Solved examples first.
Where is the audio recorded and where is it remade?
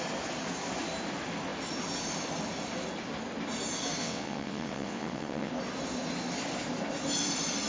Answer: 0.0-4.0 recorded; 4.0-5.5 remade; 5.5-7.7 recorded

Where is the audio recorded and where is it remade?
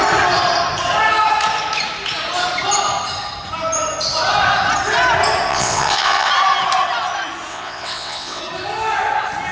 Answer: 0.0-5.5 recorded; 5.5-6.3 remade; 6.3-7.5 recorded; 7.5-8.4 remade; 8.4-9.5 recorded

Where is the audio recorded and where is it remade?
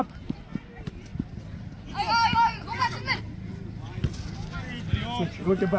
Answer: 0.0-2.5 recorded; 2.5-3.0 remade; 3.0-5.8 recorded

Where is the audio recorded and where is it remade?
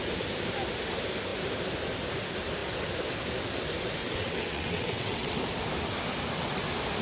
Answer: 0.0-4.0 recorded; 4.0-5.3 remade; 5.3-7.0 recorded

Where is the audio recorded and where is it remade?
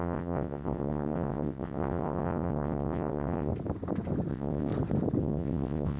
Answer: 0.0-3.5 remade; 3.5-4.3 recorded; 4.3-4.7 remade; 4.7-5.2 recorded; 5.2-6.0 remade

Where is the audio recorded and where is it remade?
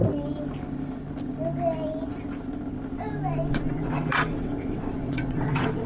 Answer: 0.0-3.5 recorded; 3.5-5.9 remade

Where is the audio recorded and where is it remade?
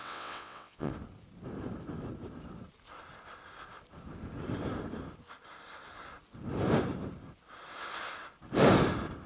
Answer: 0.0-0.9 remade; 0.9-9.3 recorded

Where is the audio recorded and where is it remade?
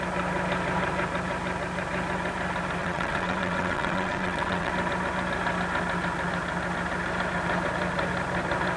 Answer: 0.0-2.8 recorded; 2.8-4.7 remade; 4.7-8.8 recorded